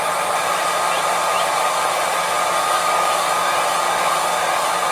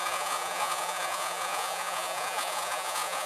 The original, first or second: first